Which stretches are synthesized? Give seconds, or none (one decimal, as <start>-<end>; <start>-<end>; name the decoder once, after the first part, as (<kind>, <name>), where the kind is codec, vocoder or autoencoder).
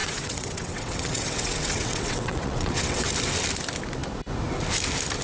0.0-3.1 (vocoder, WaveNeXt)